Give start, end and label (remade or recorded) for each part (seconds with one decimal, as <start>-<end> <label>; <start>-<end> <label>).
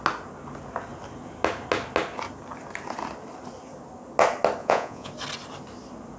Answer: 0.0-4.6 recorded; 4.6-5.1 remade; 5.1-6.2 recorded